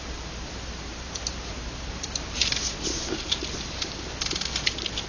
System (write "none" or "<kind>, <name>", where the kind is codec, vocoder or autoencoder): vocoder, BigVGAN v2